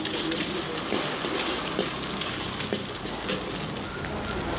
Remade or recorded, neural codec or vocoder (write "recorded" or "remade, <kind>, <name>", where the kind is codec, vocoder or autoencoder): recorded